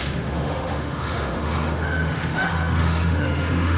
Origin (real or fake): fake